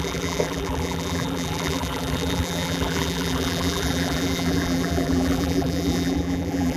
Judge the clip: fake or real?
fake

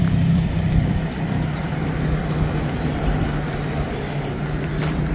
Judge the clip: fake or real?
fake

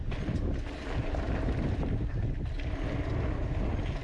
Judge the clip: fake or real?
real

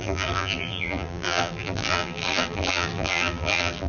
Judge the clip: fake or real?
fake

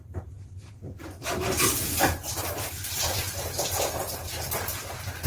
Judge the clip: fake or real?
fake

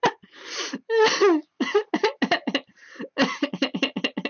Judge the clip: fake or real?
real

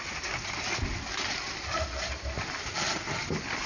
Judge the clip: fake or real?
real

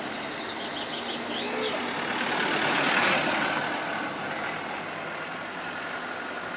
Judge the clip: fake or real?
real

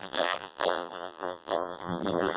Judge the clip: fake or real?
fake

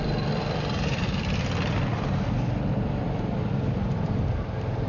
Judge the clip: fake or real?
real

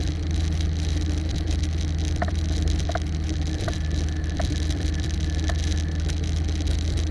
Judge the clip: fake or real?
fake